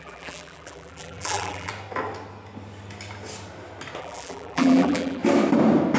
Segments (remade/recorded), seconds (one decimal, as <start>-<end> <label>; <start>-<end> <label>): 0.0-1.7 remade; 1.7-4.0 recorded; 4.0-5.2 remade; 5.2-6.0 recorded